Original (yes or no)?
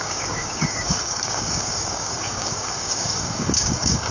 no